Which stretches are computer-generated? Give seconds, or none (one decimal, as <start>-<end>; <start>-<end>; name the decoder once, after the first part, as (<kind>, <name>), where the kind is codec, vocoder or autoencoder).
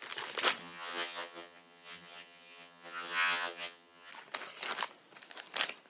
0.6-4.1 (vocoder, HiFi-GAN)